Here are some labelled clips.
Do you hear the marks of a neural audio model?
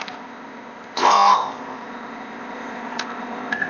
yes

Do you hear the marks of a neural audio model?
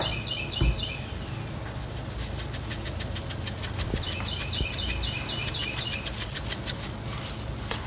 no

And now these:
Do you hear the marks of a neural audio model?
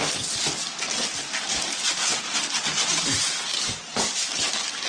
no